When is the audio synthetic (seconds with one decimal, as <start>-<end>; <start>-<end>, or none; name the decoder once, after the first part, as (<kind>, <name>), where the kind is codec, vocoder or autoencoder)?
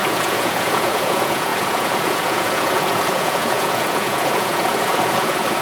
0.0-5.6 (vocoder, Vocos)